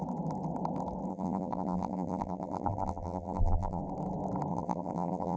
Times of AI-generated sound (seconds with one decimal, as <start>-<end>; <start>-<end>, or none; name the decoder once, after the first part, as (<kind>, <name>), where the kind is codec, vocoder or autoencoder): 1.1-3.8 (vocoder, BigVGAN v2); 4.5-5.4